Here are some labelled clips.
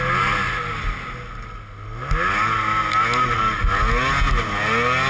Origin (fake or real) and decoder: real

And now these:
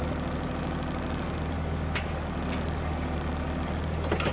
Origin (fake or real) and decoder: real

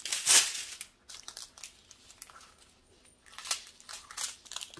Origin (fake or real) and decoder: real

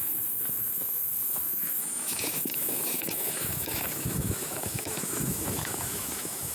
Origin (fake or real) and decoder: fake, autoencoder, DAC-VAE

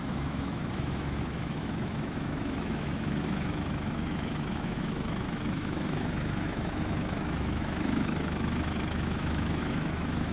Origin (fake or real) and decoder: fake, autoencoder, DAC-VAE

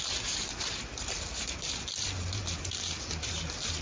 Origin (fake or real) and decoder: real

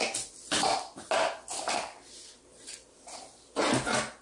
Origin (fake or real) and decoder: real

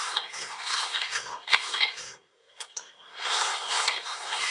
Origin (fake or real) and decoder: fake, codec, SNAC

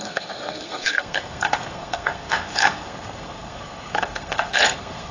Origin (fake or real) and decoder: fake, codec, SNAC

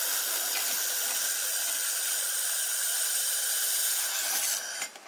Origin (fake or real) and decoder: real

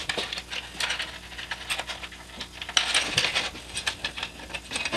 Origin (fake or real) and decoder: real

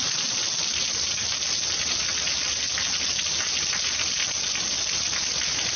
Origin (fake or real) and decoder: real